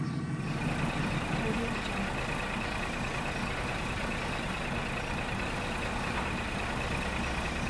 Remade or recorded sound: recorded